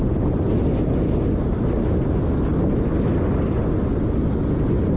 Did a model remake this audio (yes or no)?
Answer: no